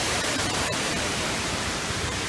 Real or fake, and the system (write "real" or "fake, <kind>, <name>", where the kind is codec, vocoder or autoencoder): fake, vocoder, BigVGAN v2